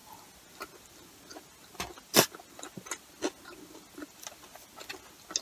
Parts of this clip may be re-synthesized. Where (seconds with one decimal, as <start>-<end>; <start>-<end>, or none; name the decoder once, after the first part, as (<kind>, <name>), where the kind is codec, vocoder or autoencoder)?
none